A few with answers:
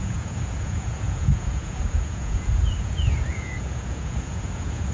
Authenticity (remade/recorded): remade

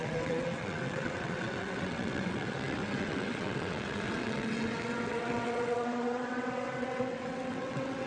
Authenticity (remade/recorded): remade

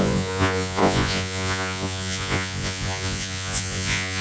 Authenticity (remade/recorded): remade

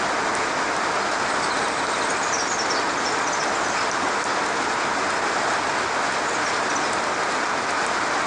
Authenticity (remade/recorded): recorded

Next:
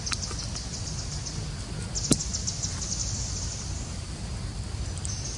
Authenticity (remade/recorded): recorded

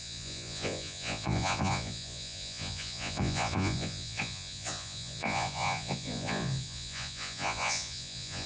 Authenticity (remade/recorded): remade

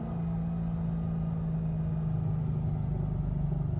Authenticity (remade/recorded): recorded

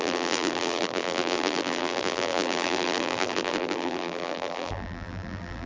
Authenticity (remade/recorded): remade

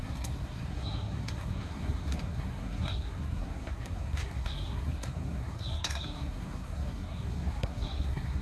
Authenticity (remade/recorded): remade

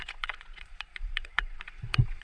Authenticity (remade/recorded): remade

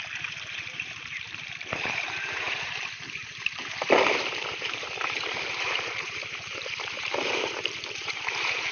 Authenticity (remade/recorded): remade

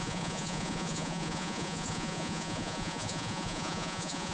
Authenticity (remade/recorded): remade